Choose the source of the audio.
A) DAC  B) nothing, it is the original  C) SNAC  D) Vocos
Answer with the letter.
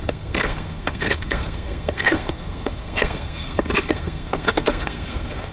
C